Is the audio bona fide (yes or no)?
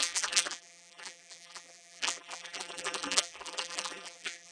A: no